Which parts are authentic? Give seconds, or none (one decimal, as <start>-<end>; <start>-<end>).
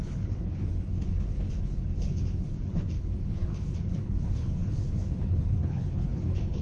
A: none